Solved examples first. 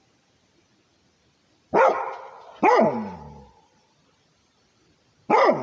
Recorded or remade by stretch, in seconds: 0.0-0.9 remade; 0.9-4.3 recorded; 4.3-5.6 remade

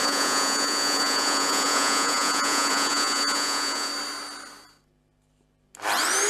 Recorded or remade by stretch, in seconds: 0.0-3.9 remade; 3.9-6.3 recorded

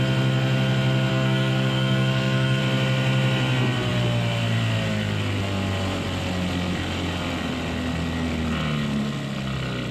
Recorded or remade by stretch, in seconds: 0.0-1.1 recorded; 1.1-2.6 remade; 2.6-9.9 recorded

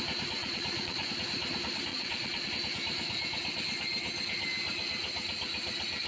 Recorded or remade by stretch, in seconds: 0.0-0.4 recorded; 0.4-1.1 remade; 1.1-1.9 recorded; 1.9-2.5 remade; 2.5-6.1 recorded

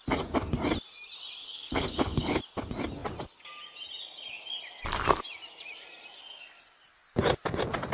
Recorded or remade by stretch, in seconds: 0.0-1.4 recorded; 1.4-2.4 remade; 2.4-7.9 recorded

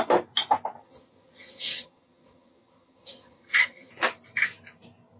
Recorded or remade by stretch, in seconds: 0.0-0.8 recorded; 0.8-3.9 remade; 3.9-5.2 recorded